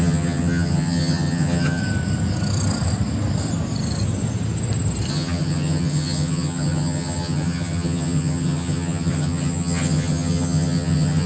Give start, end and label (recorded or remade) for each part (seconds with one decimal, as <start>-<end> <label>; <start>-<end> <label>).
0.0-1.8 remade; 1.8-5.1 recorded; 5.1-11.3 remade